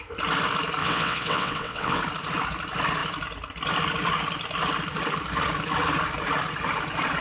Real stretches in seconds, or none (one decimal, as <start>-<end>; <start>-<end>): 0.0-0.8; 2.0-7.2